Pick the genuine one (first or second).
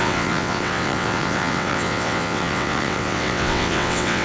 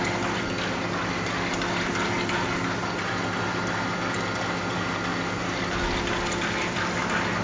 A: second